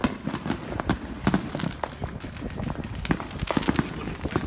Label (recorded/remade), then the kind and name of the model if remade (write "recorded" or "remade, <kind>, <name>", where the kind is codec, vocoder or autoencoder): recorded